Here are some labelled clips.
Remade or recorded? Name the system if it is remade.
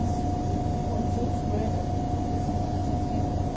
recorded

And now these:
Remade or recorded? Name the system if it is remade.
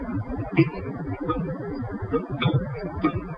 remade, vocoder, BigVGAN v2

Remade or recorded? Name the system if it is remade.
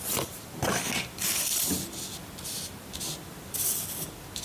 recorded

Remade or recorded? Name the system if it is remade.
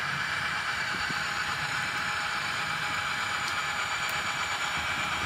remade, vocoder, BigVGAN v2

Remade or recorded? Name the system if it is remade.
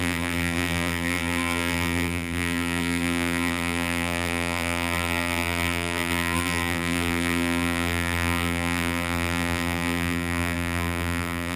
remade, vocoder, BigVGAN v2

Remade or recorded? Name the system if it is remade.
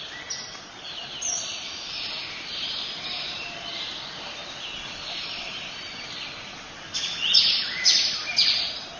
remade, vocoder, BigVGAN v2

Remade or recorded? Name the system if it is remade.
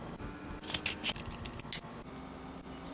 recorded